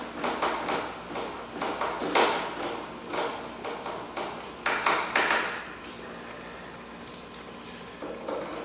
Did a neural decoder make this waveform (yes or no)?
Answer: no